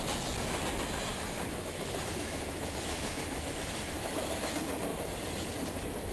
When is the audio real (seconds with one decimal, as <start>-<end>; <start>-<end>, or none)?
0.0-1.1; 4.5-6.1